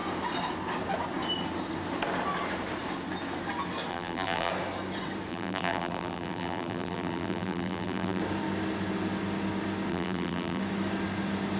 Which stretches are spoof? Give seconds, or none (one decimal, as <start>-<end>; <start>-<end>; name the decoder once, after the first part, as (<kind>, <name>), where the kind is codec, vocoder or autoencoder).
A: 3.9-4.5 (vocoder, BigVGAN v2); 5.3-8.2; 9.9-10.6